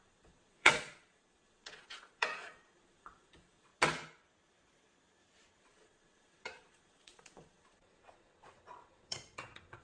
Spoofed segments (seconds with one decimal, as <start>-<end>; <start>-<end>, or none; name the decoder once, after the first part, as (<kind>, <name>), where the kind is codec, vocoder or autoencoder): 0.0-3.7 (vocoder, Vocos); 5.6-9.8